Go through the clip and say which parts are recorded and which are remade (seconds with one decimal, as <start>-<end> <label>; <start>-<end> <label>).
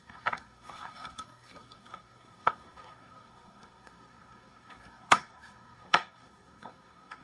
0.0-7.2 remade